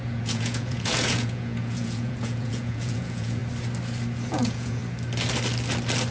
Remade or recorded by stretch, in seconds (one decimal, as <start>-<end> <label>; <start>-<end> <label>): 0.0-3.4 remade; 3.4-4.3 recorded; 4.3-4.8 remade; 4.8-6.1 recorded